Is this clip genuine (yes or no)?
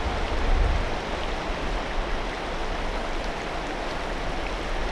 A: yes